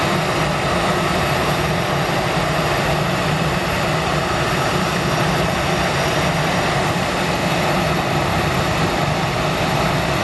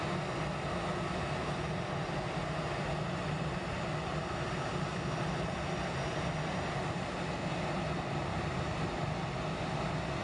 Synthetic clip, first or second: first